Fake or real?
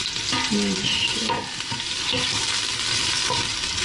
real